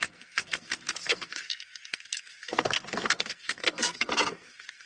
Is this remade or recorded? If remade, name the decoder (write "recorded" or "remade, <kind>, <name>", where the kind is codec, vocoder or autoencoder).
remade, codec, SNAC